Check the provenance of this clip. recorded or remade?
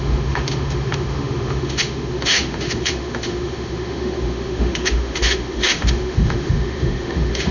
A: remade